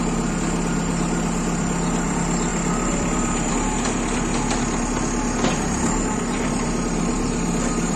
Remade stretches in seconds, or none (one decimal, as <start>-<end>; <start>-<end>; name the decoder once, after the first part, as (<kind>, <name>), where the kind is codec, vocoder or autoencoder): none

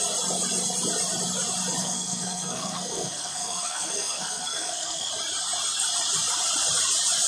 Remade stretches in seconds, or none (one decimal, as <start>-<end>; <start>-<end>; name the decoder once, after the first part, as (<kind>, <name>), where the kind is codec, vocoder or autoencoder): 1.8-5.1 (codec, SNAC)

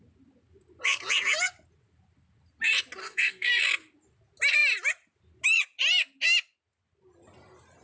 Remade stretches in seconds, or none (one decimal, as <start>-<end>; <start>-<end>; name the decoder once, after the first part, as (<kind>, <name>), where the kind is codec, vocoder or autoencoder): 3.0-3.5 (codec, SNAC)

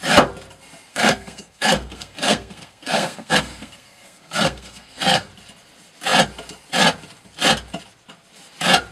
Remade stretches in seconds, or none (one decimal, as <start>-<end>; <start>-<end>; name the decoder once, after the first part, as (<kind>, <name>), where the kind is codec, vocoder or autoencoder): 0.9-5.3 (codec, SNAC)